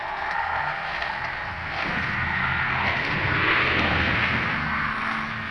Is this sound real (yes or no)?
no